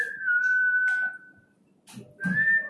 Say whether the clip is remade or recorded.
recorded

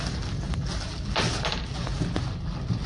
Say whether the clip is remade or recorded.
recorded